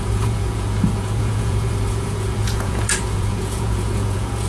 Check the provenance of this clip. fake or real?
fake